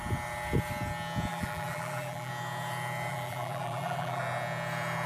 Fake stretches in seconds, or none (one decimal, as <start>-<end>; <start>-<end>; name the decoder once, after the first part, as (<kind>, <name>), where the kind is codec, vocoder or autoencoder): 1.3-2.3 (vocoder, BigVGAN v2); 3.1-4.2